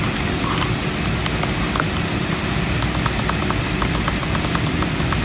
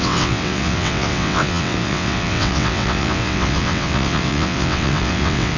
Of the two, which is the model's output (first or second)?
second